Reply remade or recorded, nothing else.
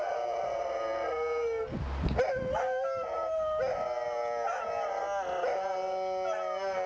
recorded